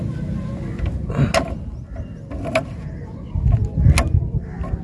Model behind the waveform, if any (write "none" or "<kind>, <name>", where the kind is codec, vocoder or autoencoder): none